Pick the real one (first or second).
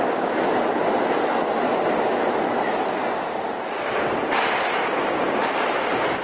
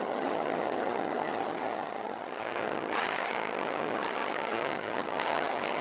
first